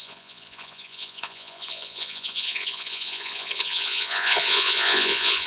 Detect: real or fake fake